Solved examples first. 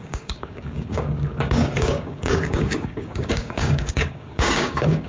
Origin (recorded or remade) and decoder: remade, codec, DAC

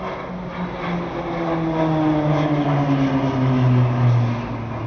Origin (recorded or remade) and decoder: recorded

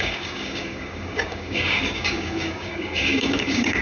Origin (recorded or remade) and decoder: remade, codec, DAC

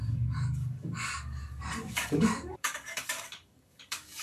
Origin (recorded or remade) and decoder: remade, codec, DAC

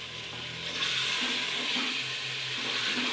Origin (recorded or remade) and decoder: recorded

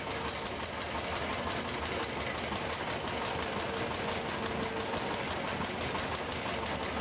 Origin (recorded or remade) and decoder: recorded